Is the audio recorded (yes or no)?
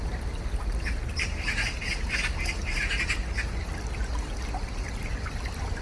yes